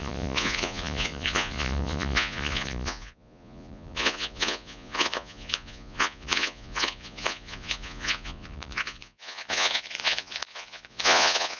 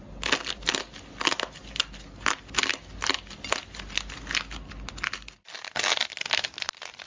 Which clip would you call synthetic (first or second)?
first